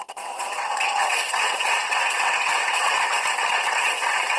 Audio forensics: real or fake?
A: fake